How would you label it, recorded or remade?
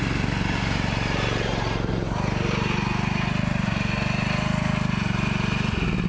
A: recorded